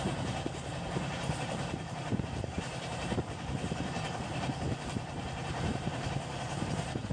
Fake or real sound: fake